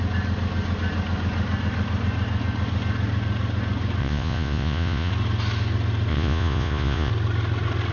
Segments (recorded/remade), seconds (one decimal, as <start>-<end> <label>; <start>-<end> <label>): 0.0-4.0 recorded; 4.0-5.1 remade; 5.1-6.1 recorded; 6.1-7.1 remade; 7.1-7.9 recorded